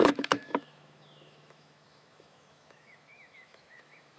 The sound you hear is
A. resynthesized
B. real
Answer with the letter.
A